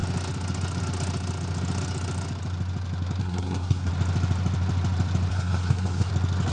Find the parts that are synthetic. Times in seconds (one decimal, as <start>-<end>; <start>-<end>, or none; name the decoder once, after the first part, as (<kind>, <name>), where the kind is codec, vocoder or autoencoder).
3.2-3.9 (codec, SNAC); 5.3-6.1